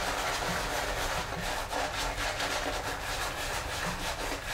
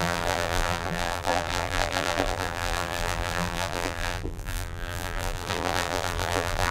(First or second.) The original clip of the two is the first